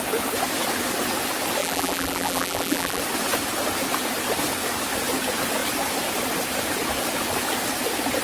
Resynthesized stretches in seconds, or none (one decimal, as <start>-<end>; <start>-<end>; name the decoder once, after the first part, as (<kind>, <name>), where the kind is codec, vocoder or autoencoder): 1.6-3.0 (vocoder, BigVGAN v2)